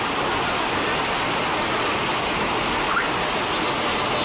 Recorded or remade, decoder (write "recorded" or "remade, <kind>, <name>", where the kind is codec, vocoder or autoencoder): recorded